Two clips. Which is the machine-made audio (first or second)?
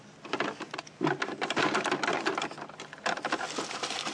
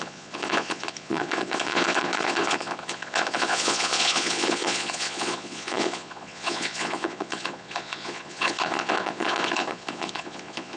second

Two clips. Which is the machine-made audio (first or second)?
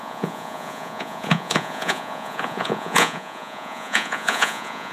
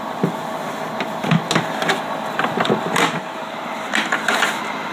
first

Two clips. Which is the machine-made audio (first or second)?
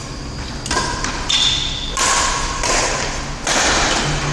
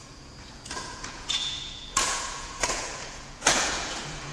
second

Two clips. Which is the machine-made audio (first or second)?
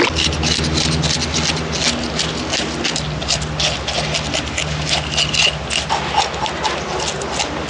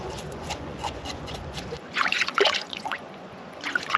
second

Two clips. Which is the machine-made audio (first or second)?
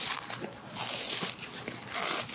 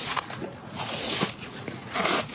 second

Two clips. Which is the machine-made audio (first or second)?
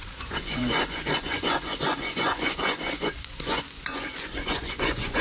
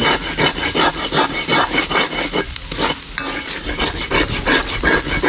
first